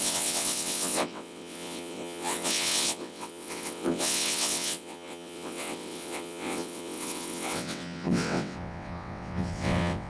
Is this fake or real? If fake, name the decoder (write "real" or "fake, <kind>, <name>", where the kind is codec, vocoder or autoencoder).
fake, vocoder, WaveNeXt